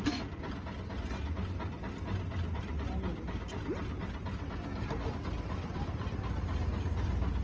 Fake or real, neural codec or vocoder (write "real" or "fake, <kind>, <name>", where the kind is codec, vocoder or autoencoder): real